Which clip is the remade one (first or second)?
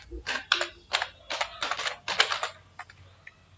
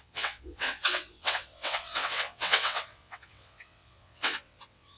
second